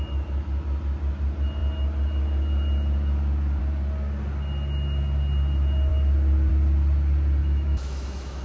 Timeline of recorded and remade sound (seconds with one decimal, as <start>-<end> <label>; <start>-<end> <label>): 0.0-7.4 recorded; 7.4-8.4 remade